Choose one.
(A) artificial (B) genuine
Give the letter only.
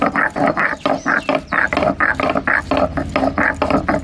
B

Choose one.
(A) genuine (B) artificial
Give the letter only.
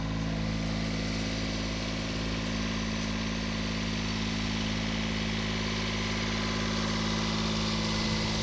A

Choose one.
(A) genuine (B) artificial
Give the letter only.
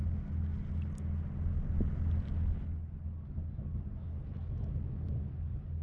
A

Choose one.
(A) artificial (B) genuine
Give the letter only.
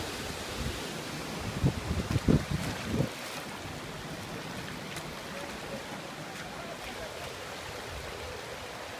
B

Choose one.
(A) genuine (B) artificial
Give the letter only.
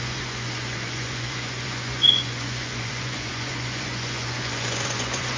B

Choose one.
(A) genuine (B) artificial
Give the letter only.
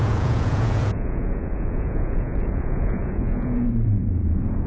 B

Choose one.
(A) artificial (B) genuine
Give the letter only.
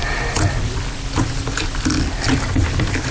B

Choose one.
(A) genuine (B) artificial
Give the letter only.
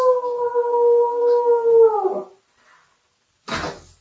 A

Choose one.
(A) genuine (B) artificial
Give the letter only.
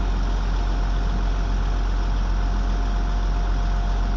A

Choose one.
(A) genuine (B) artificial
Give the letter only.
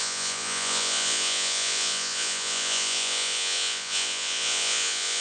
B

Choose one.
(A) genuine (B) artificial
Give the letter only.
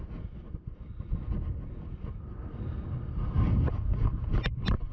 A